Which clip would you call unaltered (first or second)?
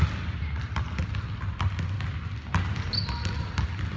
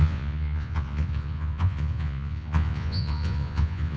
first